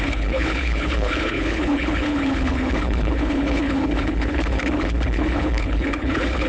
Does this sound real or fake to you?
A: fake